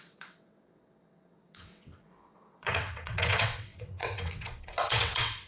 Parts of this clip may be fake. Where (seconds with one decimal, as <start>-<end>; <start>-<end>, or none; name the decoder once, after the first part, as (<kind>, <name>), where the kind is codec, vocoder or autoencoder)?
0.0-5.5 (vocoder, WaveNeXt)